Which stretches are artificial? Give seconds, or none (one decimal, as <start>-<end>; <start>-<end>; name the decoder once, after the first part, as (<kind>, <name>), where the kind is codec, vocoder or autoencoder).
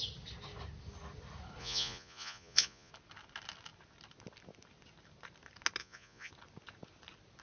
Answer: 1.6-2.9 (vocoder, Vocos); 5.8-6.3